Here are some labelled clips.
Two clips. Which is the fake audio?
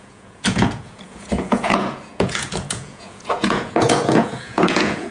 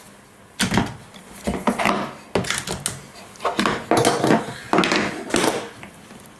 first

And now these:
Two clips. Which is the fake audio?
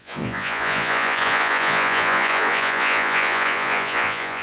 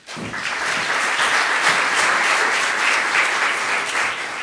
first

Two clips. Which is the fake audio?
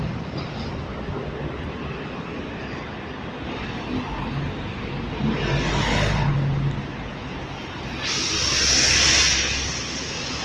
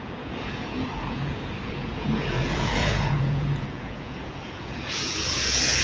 second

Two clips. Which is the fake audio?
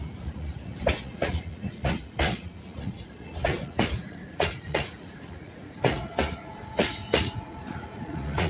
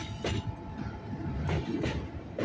first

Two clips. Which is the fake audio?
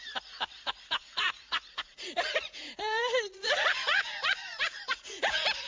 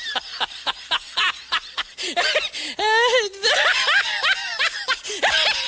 first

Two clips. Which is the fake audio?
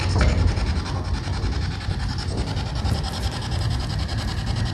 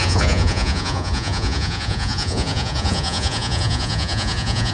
second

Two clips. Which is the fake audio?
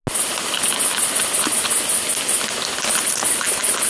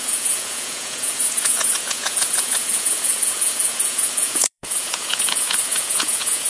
second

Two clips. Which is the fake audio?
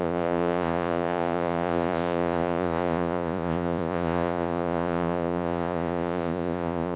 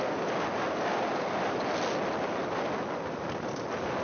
first